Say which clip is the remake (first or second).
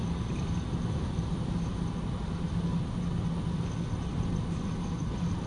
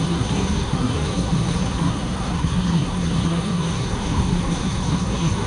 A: second